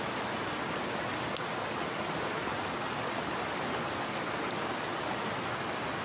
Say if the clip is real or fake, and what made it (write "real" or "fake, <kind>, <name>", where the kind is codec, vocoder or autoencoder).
real